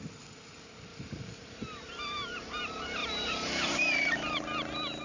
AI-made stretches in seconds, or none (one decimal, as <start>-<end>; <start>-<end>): 0.9-2.6; 3.0-4.4